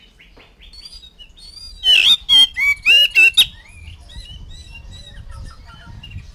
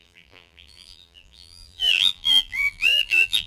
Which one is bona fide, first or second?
first